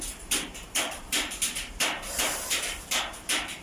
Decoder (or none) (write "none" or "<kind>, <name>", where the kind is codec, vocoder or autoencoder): vocoder, BigVGAN v2